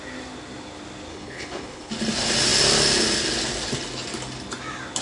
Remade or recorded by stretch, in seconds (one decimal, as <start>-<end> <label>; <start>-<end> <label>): 0.0-1.1 recorded; 1.1-1.9 remade; 1.9-5.0 recorded